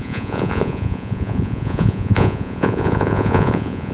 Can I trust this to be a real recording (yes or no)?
no